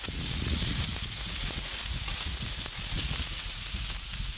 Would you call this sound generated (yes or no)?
yes